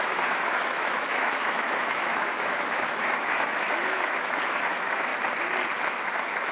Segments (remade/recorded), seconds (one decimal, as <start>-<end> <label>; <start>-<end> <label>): 0.0-5.1 remade; 5.1-5.8 recorded; 5.8-6.5 remade